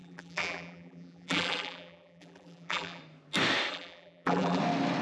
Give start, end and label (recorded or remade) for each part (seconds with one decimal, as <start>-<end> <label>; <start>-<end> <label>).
0.0-3.0 remade; 3.0-3.7 recorded; 3.7-4.6 remade; 4.6-5.0 recorded